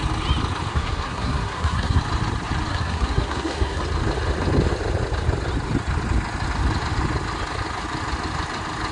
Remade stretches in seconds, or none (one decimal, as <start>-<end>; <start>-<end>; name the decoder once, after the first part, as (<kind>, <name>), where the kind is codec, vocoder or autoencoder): 0.7-2.0 (codec, SNAC); 2.7-3.8